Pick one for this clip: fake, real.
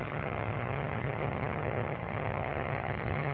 fake